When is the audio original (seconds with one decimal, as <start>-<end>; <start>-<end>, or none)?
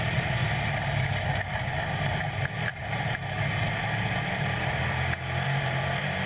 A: 0.4-2.2